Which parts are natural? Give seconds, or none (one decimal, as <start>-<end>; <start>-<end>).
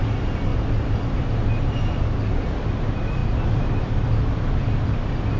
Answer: 0.0-5.4